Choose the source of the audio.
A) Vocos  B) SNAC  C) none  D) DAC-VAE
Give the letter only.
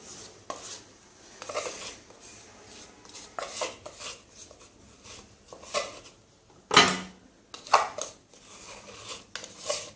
C